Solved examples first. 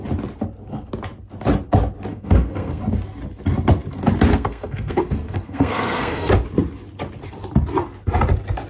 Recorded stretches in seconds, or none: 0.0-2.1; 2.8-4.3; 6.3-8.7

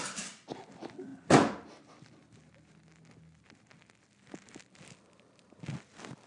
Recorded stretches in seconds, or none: 0.0-6.3

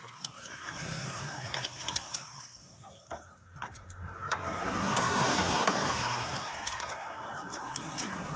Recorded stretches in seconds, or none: none